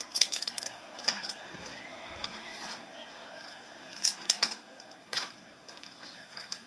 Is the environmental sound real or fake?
fake